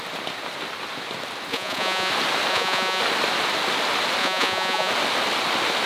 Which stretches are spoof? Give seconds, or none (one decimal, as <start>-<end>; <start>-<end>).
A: 1.5-2.1; 2.5-3.0; 4.2-4.9